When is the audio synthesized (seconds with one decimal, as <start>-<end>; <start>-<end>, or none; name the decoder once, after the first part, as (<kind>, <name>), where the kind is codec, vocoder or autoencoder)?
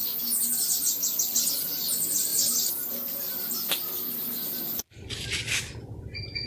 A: none